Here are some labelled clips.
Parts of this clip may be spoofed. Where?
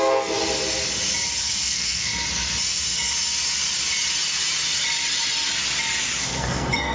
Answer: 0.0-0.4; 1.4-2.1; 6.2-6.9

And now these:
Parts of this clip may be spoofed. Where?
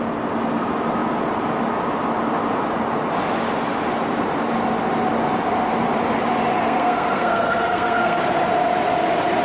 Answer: 6.6-8.2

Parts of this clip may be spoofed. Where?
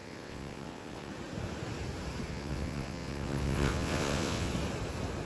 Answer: 0.0-1.1; 2.3-4.5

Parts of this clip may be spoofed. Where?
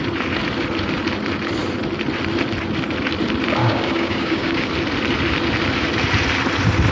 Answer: 3.6-4.7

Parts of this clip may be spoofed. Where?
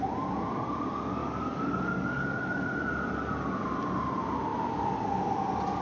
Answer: 1.2-2.7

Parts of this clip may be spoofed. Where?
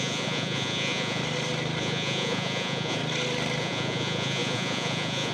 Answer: 0.0-1.2; 1.8-3.0; 3.6-5.3